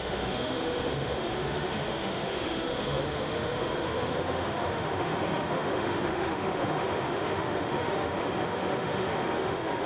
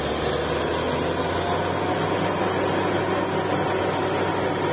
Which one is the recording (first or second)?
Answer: second